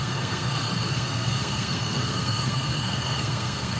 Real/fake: fake